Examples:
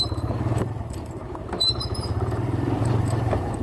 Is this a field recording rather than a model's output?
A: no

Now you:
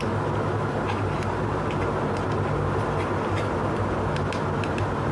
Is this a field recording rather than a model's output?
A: yes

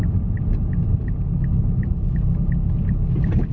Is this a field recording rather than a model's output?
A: yes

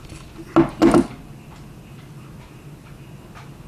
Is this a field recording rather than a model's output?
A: yes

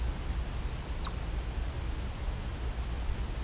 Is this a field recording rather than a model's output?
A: yes